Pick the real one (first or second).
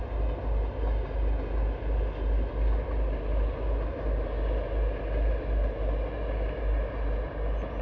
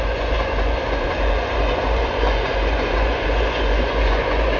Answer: first